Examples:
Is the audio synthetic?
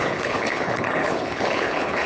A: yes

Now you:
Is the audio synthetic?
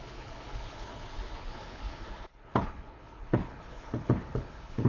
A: yes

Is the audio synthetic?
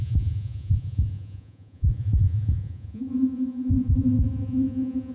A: yes